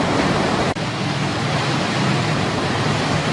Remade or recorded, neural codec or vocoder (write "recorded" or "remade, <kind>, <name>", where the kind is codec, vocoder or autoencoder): remade, vocoder, BigVGAN v2